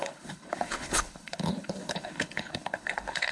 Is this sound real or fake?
fake